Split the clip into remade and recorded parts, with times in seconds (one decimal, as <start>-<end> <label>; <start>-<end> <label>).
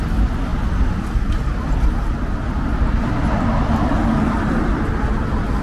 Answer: 0.0-5.6 recorded